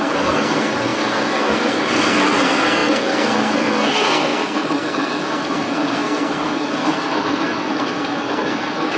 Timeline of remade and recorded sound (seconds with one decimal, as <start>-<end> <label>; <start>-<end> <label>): 0.0-9.0 remade